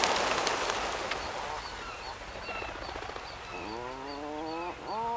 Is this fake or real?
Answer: real